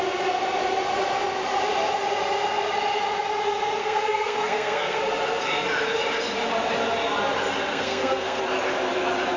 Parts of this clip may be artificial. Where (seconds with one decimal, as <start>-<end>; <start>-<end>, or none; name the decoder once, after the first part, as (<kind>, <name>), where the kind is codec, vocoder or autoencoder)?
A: 3.8-5.0 (codec, SNAC); 7.7-8.4